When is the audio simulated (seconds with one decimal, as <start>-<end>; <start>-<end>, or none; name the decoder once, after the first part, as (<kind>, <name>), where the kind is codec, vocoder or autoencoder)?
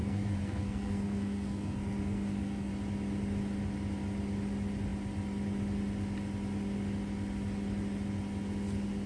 0.0-2.7 (codec, SNAC)